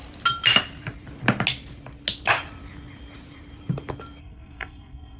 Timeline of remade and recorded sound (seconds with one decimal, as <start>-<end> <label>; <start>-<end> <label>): 0.0-4.2 recorded; 4.2-5.2 remade